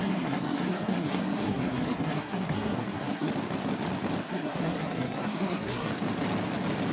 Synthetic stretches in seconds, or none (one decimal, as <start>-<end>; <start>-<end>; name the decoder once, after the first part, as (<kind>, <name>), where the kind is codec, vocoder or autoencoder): 0.0-3.3 (codec, SNAC); 4.3-5.9